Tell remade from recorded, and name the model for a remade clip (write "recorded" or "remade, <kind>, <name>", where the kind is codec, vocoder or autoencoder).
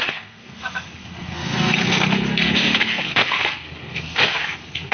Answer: remade, codec, SNAC